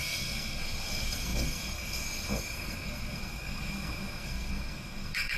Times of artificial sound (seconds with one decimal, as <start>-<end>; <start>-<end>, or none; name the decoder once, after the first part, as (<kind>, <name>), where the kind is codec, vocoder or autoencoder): 0.0-5.4 (codec, SNAC)